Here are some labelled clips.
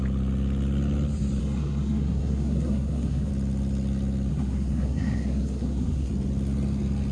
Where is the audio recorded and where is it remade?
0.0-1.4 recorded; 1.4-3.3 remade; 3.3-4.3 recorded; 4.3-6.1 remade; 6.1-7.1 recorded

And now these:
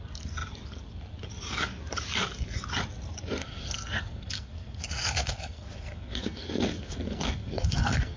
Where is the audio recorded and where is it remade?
0.0-3.4 recorded; 3.4-8.2 remade

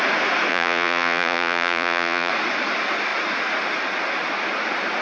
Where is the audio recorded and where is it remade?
0.0-0.5 recorded; 0.5-2.3 remade; 2.3-5.0 recorded

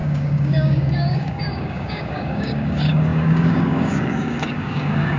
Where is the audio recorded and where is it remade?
0.0-5.2 remade

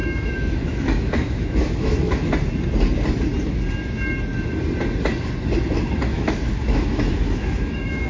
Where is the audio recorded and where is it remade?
0.0-2.3 remade; 2.3-6.1 recorded; 6.1-8.1 remade

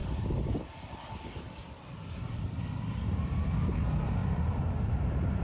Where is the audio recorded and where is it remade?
0.0-4.2 recorded; 4.2-4.7 remade; 4.7-5.4 recorded